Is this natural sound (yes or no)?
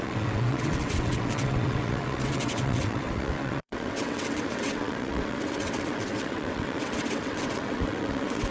no